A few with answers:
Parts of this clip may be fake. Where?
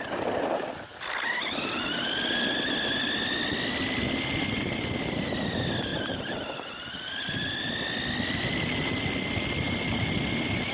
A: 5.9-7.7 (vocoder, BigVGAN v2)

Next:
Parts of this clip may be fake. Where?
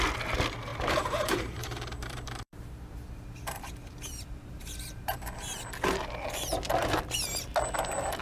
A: 0.7-5.6 (vocoder, BigVGAN v2)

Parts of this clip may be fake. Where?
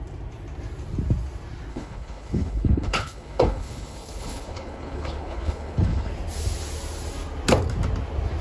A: 1.7-6.1 (codec, HILCodec)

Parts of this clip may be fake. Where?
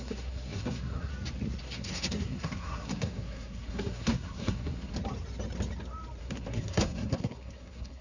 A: 0.0-1.1 (codec, SNAC); 1.6-4.9; 6.2-8.0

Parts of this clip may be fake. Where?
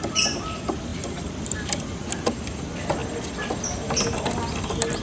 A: none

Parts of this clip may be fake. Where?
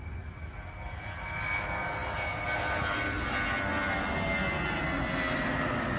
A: none